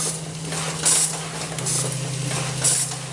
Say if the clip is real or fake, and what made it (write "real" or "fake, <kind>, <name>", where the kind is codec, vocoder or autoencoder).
real